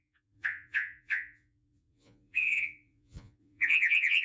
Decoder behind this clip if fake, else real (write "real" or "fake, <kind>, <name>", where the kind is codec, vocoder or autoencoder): fake, vocoder, Vocos